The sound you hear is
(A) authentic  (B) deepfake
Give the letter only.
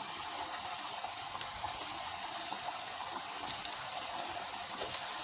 A